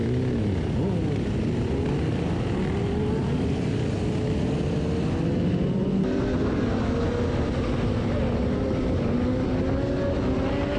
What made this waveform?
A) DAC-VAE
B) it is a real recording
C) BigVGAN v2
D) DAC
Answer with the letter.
B